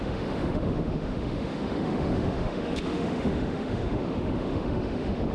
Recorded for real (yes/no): no